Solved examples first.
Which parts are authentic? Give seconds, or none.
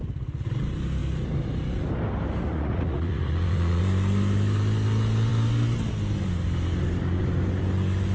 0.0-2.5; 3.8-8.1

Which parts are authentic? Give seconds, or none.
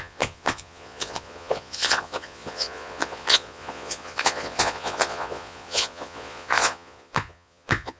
none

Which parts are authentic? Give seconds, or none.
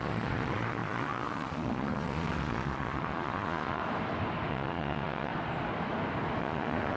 3.8-4.5; 5.3-6.4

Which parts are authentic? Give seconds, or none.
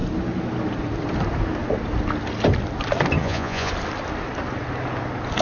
0.0-3.2; 3.7-5.4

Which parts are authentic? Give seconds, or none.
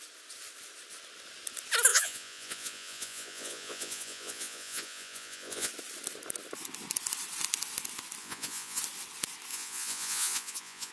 0.0-1.9; 5.7-8.2; 8.8-9.5